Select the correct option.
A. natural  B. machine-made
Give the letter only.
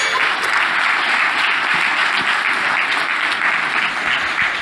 A